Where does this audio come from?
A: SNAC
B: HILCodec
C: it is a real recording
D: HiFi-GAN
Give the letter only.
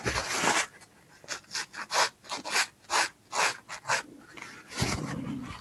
C